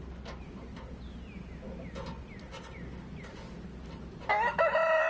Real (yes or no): yes